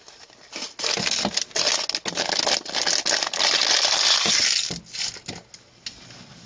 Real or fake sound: real